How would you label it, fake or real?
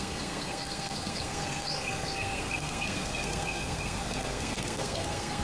fake